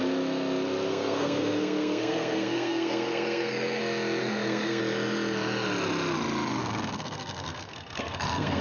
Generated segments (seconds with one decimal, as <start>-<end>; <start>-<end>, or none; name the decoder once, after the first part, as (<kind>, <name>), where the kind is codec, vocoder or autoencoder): 0.9-3.8 (codec, SNAC); 4.2-4.8; 6.6-8.6